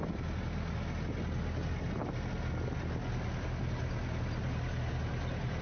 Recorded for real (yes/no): yes